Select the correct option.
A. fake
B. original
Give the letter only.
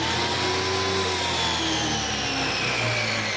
B